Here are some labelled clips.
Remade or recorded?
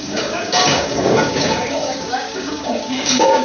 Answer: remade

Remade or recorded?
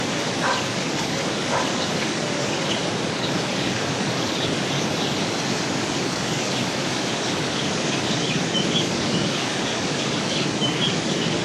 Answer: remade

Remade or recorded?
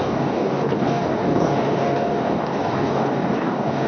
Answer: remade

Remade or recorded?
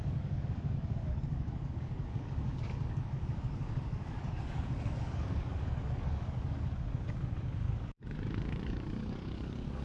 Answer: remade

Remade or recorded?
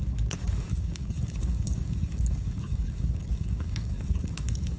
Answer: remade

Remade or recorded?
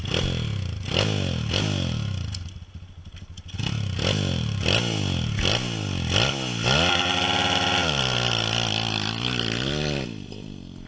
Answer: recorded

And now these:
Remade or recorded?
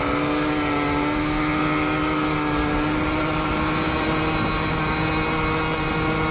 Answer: recorded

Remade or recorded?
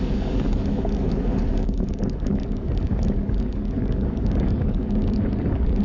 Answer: remade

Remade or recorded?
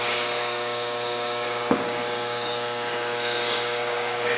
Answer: remade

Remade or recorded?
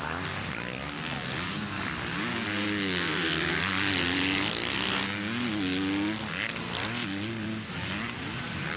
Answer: recorded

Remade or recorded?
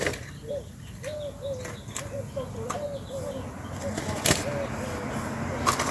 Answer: recorded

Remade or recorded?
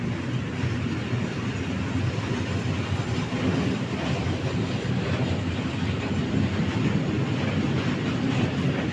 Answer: recorded